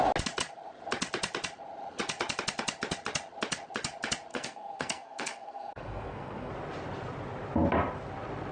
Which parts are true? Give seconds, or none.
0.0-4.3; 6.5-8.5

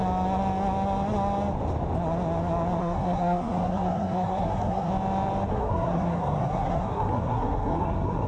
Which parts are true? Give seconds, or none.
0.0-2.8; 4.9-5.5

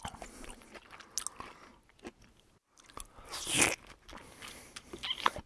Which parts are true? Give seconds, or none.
0.0-5.5

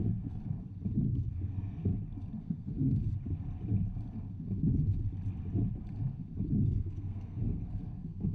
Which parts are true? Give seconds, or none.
0.4-1.3; 1.9-2.4; 3.0-6.6

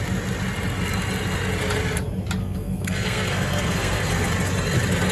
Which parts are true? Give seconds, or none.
0.0-2.4; 4.3-5.1